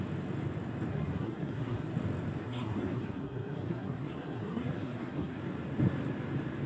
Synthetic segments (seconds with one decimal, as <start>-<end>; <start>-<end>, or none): 0.9-1.9; 2.4-5.4